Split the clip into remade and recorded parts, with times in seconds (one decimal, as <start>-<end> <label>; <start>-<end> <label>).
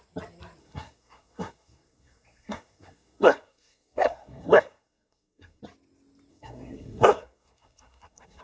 0.0-0.6 recorded; 0.6-5.6 remade; 5.6-6.3 recorded; 6.3-8.4 remade